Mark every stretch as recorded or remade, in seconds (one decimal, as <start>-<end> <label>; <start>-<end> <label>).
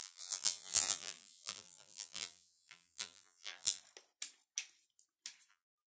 0.0-3.8 remade; 3.8-5.5 recorded; 5.5-5.9 remade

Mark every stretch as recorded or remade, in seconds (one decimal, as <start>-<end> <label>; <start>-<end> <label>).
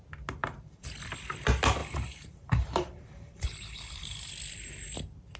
0.0-0.4 recorded; 0.4-0.9 remade; 0.9-1.8 recorded; 1.8-4.3 remade; 4.3-5.4 recorded